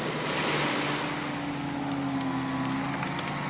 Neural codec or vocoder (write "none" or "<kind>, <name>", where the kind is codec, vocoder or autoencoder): none